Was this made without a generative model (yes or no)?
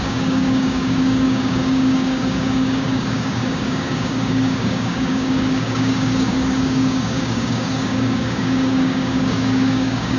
no